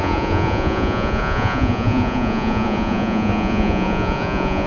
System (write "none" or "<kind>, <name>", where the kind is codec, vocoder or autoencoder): vocoder, Vocos